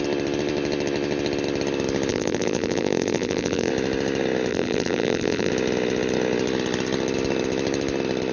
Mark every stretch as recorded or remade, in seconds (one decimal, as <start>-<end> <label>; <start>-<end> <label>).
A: 0.0-2.1 recorded; 2.1-3.7 remade; 3.7-4.5 recorded; 4.5-5.5 remade; 5.5-8.3 recorded